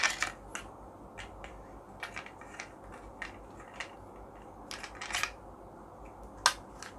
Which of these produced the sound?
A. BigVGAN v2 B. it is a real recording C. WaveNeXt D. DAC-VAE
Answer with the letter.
B